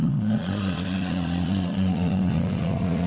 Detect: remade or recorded remade